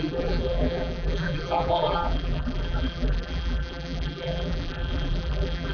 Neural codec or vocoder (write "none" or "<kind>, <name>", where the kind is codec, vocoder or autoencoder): vocoder, BigVGAN v2